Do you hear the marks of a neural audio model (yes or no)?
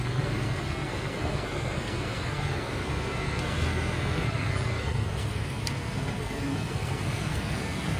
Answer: yes